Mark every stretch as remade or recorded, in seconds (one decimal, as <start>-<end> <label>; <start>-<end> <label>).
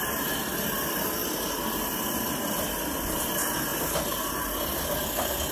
0.0-5.5 recorded